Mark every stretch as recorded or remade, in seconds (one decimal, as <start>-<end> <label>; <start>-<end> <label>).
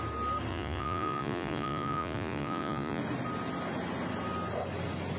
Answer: 0.0-0.5 recorded; 0.5-3.0 remade; 3.0-5.2 recorded